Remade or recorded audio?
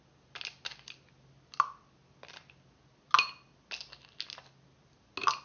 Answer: recorded